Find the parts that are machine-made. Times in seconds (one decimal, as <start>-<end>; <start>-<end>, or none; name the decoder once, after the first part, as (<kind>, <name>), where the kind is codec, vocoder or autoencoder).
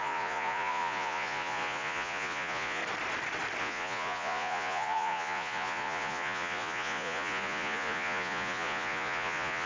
0.0-2.8 (vocoder, Vocos); 3.6-9.7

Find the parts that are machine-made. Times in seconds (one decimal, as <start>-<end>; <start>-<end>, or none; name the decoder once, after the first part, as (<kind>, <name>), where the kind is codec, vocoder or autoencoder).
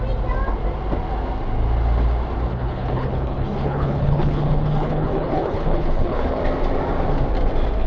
2.5-6.4 (codec, HILCodec)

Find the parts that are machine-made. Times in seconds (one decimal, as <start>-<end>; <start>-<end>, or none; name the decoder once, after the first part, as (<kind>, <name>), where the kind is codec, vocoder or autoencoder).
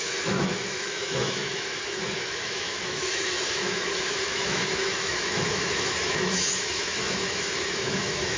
0.0-8.4 (autoencoder, DAC-VAE)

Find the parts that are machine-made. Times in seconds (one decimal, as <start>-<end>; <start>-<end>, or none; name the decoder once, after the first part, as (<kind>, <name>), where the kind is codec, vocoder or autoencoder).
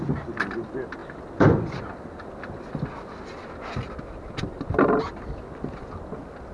none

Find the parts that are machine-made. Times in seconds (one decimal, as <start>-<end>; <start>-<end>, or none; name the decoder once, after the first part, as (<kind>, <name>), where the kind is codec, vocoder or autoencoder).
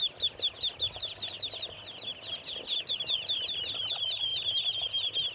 none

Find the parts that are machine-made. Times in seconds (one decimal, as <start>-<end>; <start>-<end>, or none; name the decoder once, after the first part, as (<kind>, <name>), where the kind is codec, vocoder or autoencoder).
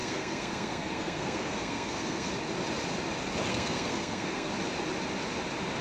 0.0-2.3 (codec, SNAC); 3.5-4.5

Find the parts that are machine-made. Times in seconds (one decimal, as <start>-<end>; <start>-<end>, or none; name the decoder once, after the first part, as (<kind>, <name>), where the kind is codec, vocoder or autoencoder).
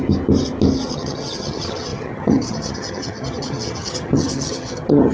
0.9-5.1 (vocoder, HiFi-GAN)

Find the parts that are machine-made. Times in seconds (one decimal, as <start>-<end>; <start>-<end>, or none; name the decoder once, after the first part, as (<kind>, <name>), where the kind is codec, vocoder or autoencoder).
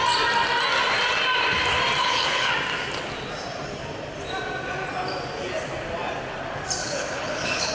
2.0-2.5 (codec, HILCodec); 6.8-7.7